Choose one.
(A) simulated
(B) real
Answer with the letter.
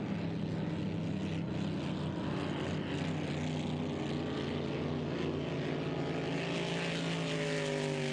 B